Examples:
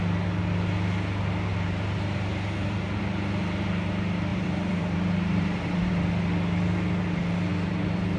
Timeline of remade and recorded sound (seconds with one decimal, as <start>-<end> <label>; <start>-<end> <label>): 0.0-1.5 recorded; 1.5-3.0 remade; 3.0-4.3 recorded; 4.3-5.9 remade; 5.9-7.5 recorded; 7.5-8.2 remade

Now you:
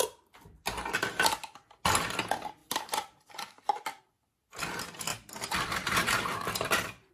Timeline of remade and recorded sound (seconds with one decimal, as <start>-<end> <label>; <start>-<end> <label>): 0.0-2.6 recorded; 2.6-3.5 remade; 3.5-5.1 recorded; 5.1-7.1 remade

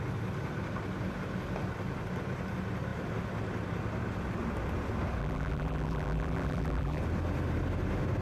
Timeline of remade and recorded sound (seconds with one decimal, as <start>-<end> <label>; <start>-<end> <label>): 0.0-5.2 recorded; 5.2-7.0 remade; 7.0-8.2 recorded

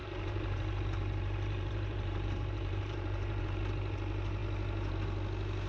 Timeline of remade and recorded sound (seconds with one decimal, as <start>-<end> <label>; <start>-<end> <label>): 0.0-3.4 remade; 3.4-5.7 recorded

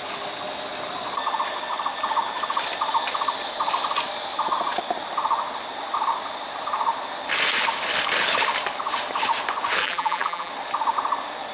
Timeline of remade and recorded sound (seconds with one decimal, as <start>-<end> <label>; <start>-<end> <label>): 0.0-9.8 recorded; 9.8-10.5 remade; 10.5-11.5 recorded

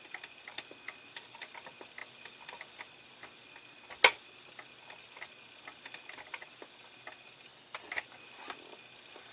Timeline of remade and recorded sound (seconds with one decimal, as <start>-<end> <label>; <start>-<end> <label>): 0.0-9.3 recorded